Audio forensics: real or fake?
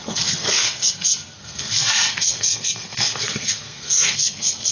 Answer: fake